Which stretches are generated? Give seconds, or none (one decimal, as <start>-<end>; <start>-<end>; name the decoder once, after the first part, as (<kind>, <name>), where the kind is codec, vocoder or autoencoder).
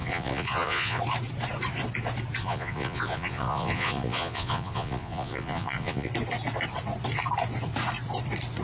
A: 0.0-1.0 (vocoder, Vocos); 2.4-6.1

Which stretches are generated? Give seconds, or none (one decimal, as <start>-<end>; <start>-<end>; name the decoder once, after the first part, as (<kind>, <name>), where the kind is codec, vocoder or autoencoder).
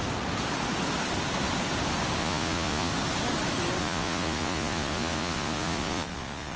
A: 2.2-2.9 (vocoder, Vocos); 3.8-6.6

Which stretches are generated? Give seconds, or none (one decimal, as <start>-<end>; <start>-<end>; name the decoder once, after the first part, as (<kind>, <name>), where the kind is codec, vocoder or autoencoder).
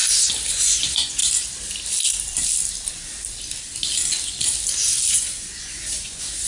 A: 0.5-1.2 (vocoder, Vocos); 5.1-6.5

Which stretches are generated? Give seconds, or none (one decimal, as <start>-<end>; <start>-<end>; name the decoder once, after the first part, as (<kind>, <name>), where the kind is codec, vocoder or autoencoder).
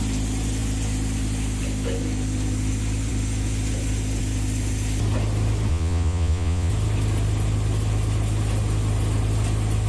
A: 5.7-6.7 (vocoder, Vocos)